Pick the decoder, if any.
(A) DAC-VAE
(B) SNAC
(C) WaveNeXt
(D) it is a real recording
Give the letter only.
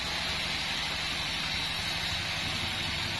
D